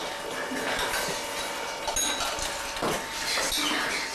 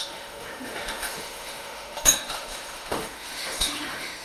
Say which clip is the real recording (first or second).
first